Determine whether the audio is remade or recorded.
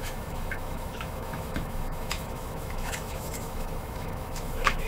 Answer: remade